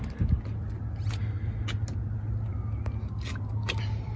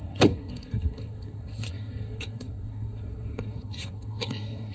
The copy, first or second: second